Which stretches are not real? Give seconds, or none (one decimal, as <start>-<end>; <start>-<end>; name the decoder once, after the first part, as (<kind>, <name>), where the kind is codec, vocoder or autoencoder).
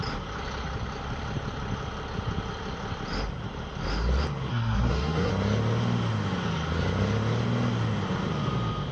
4.5-5.3 (codec, SNAC)